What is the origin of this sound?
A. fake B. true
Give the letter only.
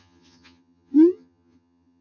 A